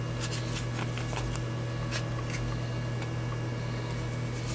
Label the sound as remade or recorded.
recorded